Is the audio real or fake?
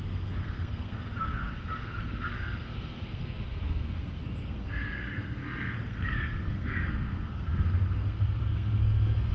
fake